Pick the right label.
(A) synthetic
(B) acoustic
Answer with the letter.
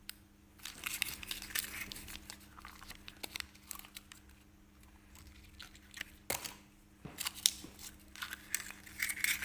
B